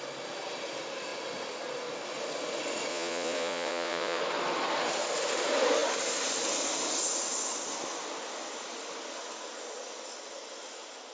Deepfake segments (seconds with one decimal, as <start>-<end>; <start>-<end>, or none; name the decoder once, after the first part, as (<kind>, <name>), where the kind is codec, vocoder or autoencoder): 2.9-4.2 (vocoder, Vocos)